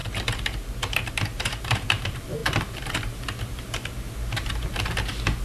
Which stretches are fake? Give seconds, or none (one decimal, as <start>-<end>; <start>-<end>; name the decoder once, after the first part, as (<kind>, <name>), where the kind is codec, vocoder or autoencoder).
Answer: 0.0-5.4 (vocoder, BigVGAN v2)